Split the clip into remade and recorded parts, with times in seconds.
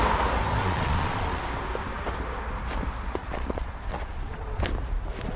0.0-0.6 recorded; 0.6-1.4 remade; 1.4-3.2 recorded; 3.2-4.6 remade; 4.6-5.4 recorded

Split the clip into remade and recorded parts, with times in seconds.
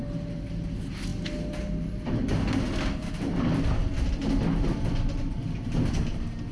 0.0-6.5 recorded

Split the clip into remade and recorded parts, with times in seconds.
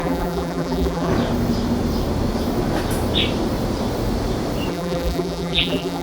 0.0-1.1 remade; 1.1-4.7 recorded; 4.7-6.0 remade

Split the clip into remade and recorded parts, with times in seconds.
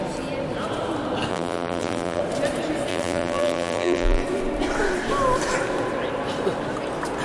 0.0-1.3 recorded; 1.3-2.2 remade; 2.2-2.9 recorded; 2.9-4.2 remade; 4.2-7.2 recorded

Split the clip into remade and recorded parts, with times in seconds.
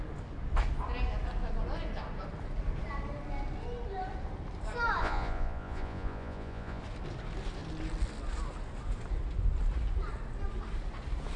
0.0-5.0 recorded; 5.0-6.8 remade; 6.8-11.4 recorded